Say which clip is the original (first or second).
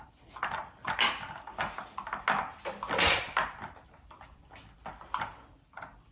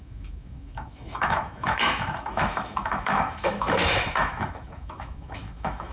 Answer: first